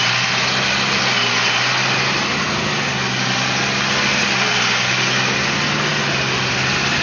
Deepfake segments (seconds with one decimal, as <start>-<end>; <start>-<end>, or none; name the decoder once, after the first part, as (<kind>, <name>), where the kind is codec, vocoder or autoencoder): none